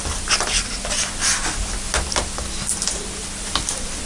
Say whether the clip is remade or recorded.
recorded